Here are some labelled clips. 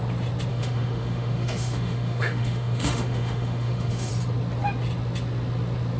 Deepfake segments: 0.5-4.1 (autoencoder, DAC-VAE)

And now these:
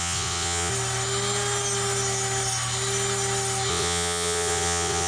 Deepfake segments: 0.0-0.7 (vocoder, WaveNeXt); 3.7-5.1

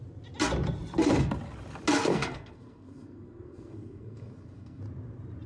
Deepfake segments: 2.1-4.8 (codec, SNAC)

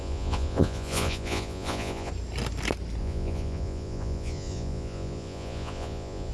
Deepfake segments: 0.0-2.1 (vocoder, Vocos); 3.0-6.3

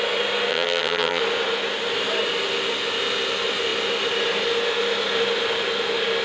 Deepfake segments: 0.5-1.2 (vocoder, HiFi-GAN)

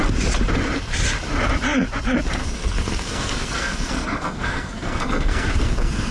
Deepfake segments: 2.4-6.1 (codec, SNAC)